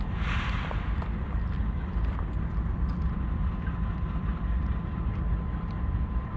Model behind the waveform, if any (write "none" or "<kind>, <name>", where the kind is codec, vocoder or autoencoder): vocoder, BigVGAN v2